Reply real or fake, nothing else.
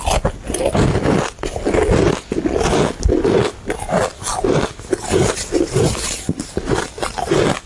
real